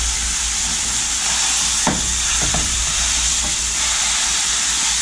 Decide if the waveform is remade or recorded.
recorded